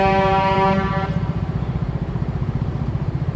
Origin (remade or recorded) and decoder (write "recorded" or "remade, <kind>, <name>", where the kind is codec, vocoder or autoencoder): remade, vocoder, BigVGAN v2